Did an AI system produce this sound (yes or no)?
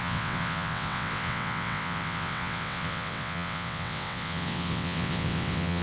yes